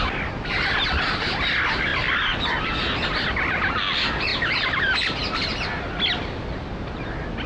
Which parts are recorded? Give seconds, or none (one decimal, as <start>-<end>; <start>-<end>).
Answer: 0.0-7.5